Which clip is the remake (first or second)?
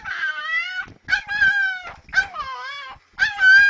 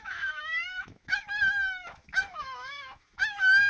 second